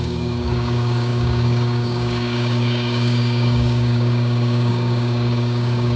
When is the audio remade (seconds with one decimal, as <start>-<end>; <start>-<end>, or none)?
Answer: 0.0-6.0